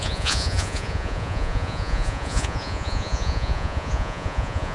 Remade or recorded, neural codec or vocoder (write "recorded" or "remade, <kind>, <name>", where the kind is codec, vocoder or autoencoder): remade, vocoder, Vocos